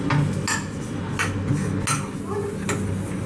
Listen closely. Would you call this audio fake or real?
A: real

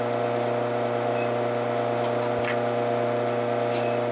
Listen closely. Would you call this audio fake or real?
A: real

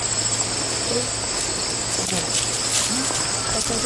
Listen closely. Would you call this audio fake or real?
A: real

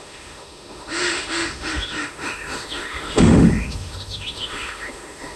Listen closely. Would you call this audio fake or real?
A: fake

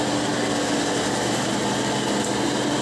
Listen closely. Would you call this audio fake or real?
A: real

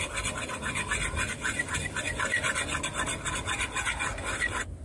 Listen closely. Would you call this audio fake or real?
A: real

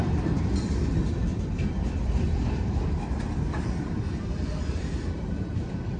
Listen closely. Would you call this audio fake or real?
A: fake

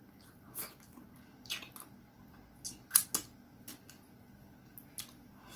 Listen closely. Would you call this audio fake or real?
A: real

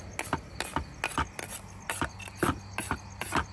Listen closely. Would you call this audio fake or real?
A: real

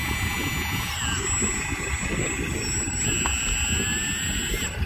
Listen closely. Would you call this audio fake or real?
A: real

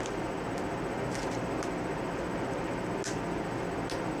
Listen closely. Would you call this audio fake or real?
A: real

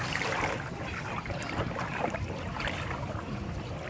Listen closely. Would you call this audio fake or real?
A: real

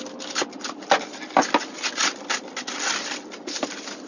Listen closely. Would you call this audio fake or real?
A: real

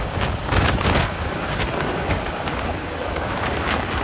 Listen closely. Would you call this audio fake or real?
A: fake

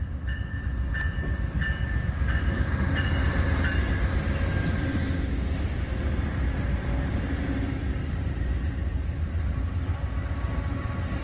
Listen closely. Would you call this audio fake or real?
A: real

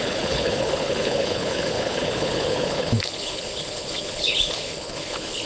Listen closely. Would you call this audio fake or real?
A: fake